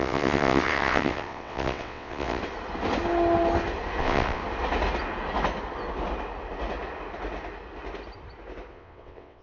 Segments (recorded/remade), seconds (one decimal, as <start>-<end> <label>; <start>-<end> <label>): 0.0-2.4 remade; 2.4-4.0 recorded; 4.0-4.4 remade; 4.4-8.7 recorded; 8.7-9.4 remade

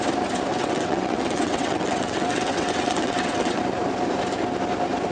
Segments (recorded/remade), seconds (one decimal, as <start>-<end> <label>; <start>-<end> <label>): 0.0-0.5 recorded; 0.5-3.6 remade; 3.6-5.1 recorded

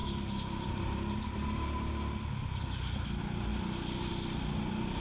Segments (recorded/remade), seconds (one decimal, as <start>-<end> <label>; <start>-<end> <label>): 0.0-5.0 recorded

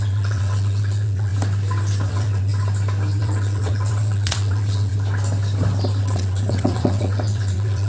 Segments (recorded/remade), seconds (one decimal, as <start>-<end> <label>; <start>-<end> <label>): 0.0-1.3 remade; 1.3-2.1 recorded; 2.1-2.5 remade; 2.5-3.2 recorded; 3.2-4.9 remade; 4.9-6.0 recorded; 6.0-7.9 remade

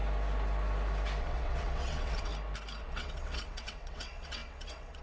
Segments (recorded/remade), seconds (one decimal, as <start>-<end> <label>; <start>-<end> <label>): 0.0-1.2 recorded; 1.2-2.3 remade; 2.3-2.8 recorded; 2.8-5.0 remade

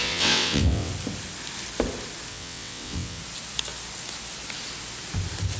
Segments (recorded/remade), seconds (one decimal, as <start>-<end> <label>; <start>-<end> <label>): 0.0-0.9 remade; 0.9-2.3 recorded; 2.3-3.2 remade; 3.2-5.6 recorded

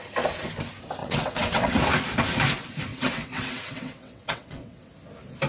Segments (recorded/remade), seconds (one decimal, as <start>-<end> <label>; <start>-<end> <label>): 0.0-1.0 recorded; 1.0-1.8 remade; 1.8-2.9 recorded; 2.9-4.9 remade; 4.9-5.5 recorded